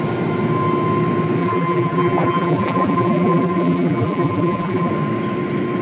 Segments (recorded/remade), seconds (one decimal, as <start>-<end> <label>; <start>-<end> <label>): 0.0-1.4 recorded; 1.4-4.9 remade; 4.9-5.8 recorded